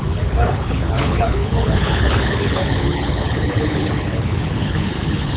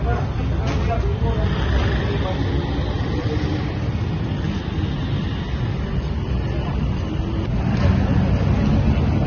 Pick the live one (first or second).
second